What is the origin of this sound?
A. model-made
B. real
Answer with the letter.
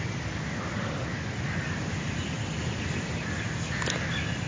B